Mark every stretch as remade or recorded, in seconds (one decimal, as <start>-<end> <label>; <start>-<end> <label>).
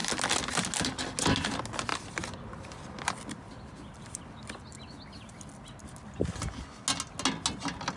0.0-1.9 recorded; 1.9-5.2 remade; 5.2-8.0 recorded